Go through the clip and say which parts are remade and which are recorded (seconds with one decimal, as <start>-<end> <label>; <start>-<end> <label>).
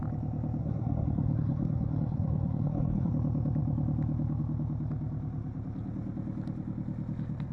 0.0-0.6 recorded; 0.6-3.1 remade; 3.1-7.5 recorded